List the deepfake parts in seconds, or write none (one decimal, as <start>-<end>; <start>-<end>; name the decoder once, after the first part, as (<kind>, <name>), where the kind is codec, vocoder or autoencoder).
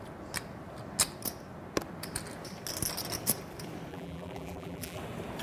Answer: 3.9-5.0 (vocoder, BigVGAN v2)